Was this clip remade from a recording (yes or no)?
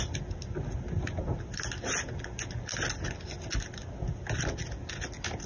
no